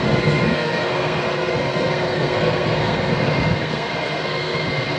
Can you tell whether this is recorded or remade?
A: remade